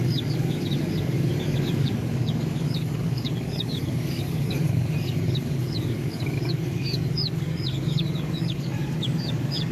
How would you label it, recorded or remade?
remade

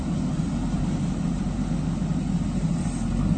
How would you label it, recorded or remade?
recorded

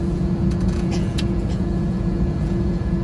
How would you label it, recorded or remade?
remade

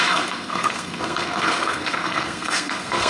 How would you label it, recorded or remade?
remade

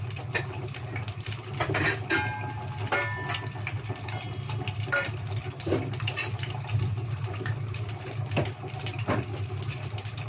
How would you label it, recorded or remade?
recorded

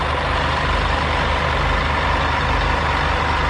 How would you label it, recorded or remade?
recorded